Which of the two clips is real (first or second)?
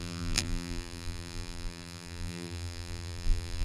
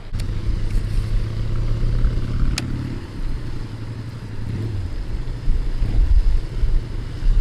second